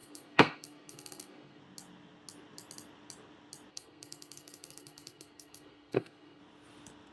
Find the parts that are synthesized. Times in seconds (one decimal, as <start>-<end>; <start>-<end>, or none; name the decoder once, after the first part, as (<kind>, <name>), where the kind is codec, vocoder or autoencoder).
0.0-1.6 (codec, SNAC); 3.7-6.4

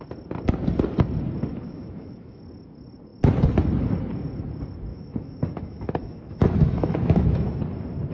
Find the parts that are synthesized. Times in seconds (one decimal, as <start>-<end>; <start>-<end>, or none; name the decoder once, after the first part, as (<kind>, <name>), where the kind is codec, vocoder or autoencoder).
1.5-2.4 (autoencoder, DAC-VAE); 4.9-7.6

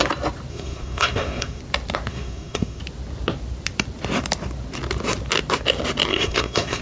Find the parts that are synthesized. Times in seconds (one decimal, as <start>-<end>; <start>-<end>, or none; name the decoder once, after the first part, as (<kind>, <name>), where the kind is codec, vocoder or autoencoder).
0.5-1.6 (codec, SNAC); 2.1-2.8; 6.1-6.8